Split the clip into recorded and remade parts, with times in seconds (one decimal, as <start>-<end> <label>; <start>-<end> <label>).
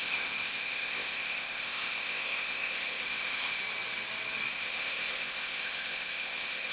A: 0.0-3.6 remade; 3.6-4.5 recorded; 4.5-6.7 remade